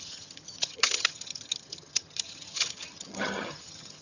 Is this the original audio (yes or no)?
no